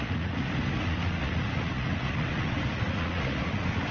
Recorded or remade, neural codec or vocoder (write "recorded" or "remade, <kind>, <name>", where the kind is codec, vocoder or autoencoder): remade, vocoder, Vocos